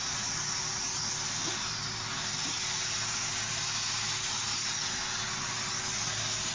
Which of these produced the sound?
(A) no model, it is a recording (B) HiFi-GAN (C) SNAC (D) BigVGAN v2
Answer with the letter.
A